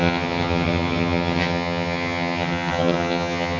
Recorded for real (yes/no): no